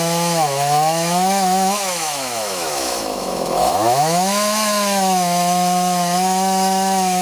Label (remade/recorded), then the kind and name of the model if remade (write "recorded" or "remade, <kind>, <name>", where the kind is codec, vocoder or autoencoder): remade, autoencoder, DAC-VAE